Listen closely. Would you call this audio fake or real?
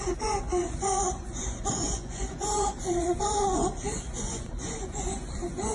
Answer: fake